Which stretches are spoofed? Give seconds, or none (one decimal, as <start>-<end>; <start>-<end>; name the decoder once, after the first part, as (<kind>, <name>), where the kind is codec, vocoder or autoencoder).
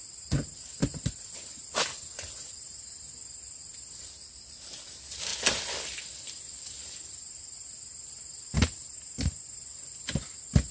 none